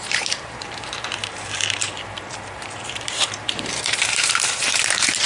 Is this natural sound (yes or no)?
no